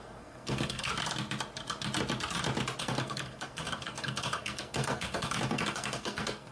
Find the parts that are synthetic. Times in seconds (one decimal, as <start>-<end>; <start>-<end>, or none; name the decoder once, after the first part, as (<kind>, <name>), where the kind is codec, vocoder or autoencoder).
0.0-0.9 (codec, SNAC); 2.8-6.5